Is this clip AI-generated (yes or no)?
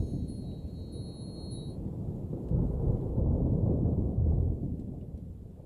no